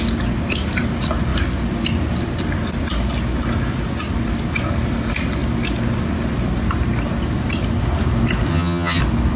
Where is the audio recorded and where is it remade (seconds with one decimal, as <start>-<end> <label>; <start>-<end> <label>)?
0.0-8.5 recorded; 8.5-9.0 remade; 9.0-9.4 recorded